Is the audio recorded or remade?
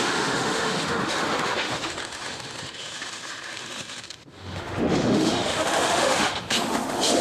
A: remade